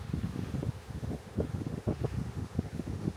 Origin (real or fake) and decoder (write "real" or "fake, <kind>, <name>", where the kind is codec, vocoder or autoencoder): fake, autoencoder, DAC-VAE